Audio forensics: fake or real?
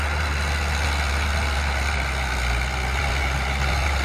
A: real